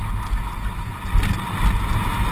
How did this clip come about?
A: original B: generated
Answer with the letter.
A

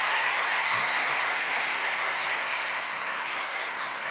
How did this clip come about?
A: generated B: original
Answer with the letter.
A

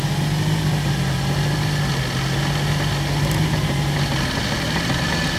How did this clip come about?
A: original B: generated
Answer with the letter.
A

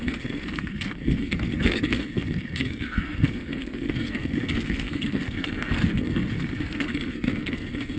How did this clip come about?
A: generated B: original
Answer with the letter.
A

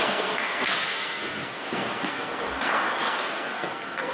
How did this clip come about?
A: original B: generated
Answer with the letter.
B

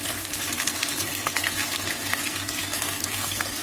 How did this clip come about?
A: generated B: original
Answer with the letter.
A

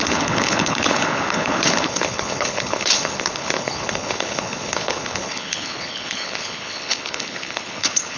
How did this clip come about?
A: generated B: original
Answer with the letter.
A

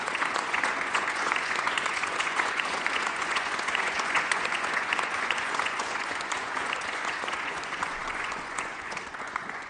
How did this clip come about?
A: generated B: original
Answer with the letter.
A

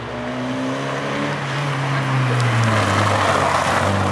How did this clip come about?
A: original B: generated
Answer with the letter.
A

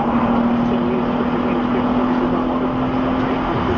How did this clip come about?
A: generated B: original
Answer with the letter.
B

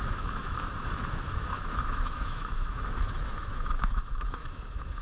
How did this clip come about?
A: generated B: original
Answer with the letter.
A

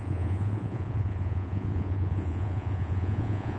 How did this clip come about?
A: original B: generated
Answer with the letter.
B